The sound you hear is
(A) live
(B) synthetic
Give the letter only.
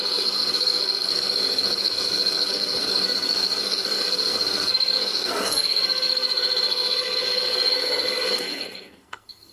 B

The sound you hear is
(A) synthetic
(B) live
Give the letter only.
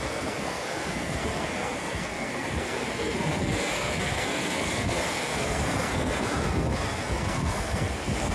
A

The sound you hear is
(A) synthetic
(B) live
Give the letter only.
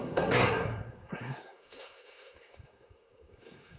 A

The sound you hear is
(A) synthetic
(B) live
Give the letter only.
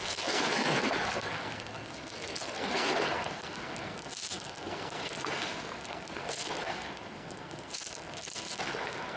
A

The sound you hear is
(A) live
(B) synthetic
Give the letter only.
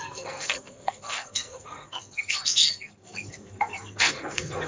B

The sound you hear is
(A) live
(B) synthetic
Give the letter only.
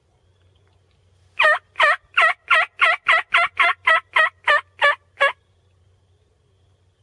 A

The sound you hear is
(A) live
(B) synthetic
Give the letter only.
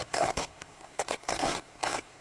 B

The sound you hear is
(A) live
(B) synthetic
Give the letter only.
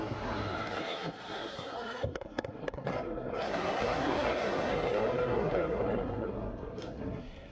B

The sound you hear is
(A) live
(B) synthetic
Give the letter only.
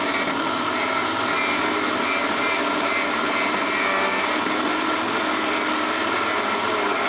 A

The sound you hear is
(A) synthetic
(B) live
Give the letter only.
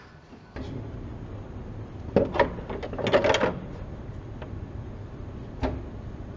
B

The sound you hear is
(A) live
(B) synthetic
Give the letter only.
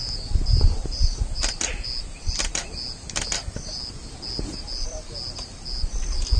A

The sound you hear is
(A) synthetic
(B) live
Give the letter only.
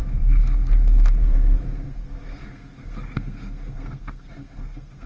A